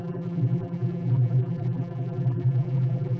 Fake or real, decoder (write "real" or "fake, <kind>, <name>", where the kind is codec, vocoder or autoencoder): fake, vocoder, BigVGAN v2